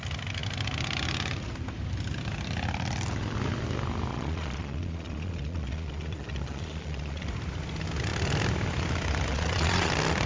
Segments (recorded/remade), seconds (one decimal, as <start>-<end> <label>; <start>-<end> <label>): 0.0-4.1 recorded; 4.1-7.3 remade; 7.3-9.3 recorded; 9.3-9.9 remade; 9.9-10.3 recorded